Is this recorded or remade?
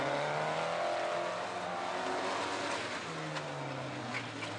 recorded